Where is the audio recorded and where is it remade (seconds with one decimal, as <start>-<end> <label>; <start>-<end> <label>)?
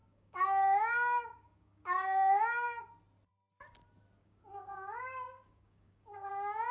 0.0-2.8 remade; 2.8-4.2 recorded; 4.2-6.3 remade; 6.3-6.7 recorded